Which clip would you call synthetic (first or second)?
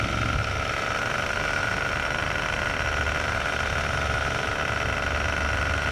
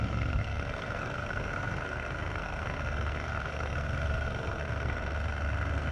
second